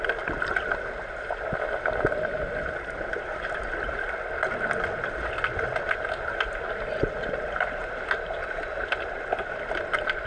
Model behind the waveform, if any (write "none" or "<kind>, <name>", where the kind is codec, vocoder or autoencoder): none